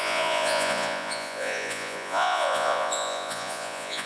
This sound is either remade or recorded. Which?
remade